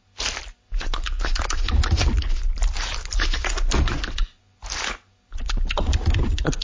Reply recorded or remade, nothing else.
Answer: recorded